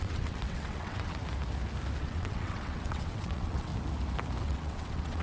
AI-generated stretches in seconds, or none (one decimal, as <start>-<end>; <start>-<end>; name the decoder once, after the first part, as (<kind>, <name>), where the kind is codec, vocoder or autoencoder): 0.0-1.2 (vocoder, WaveNeXt); 2.0-3.7; 4.4-5.2

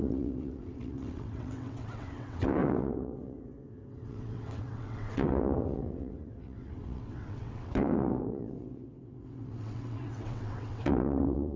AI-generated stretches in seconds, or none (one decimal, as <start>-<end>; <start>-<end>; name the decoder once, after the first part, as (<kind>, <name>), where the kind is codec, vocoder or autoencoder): 0.0-11.6 (vocoder, WaveNeXt)

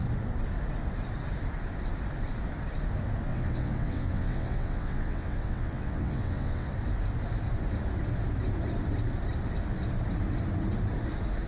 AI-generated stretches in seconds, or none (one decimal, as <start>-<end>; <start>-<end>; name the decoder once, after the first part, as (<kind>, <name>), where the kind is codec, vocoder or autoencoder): 3.3-6.7 (vocoder, WaveNeXt)